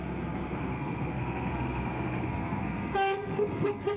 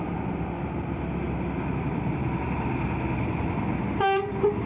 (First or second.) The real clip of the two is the second